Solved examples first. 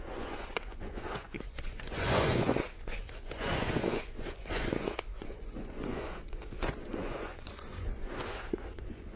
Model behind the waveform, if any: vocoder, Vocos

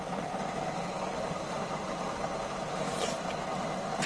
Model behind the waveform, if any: none